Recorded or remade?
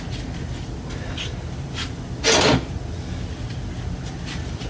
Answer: recorded